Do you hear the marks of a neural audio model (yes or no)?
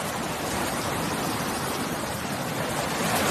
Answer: no